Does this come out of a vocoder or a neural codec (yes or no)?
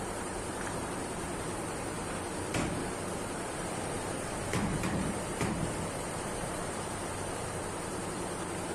yes